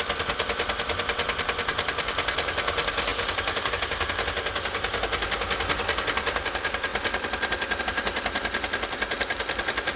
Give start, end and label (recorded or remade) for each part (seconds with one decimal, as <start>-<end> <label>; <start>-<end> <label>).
0.0-3.1 recorded; 3.1-3.7 remade; 3.7-10.0 recorded